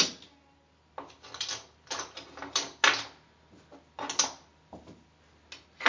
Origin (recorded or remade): recorded